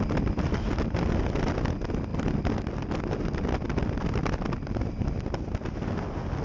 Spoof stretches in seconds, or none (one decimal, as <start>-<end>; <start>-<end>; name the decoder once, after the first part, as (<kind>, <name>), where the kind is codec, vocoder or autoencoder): none